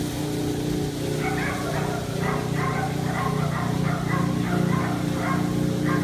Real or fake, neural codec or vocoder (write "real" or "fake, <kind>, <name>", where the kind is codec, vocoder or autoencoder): real